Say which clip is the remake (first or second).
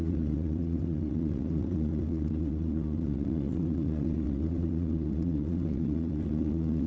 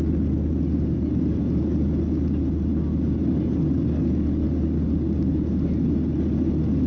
first